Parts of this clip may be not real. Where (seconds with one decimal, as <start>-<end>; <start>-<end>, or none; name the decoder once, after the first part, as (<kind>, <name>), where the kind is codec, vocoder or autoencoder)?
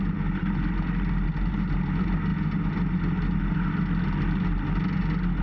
none